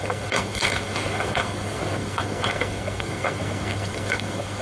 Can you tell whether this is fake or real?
fake